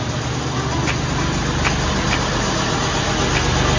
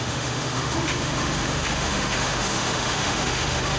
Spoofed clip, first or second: second